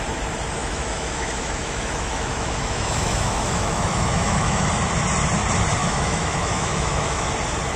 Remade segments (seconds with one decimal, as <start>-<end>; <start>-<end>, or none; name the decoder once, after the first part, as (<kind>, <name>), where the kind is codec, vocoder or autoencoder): 0.6-4.7 (autoencoder, DAC-VAE); 5.8-7.3